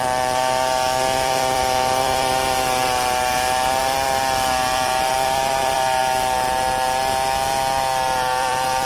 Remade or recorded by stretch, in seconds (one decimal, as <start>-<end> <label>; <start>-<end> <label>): 0.0-6.0 remade; 6.0-8.4 recorded; 8.4-8.9 remade